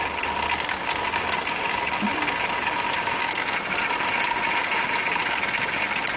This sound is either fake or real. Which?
real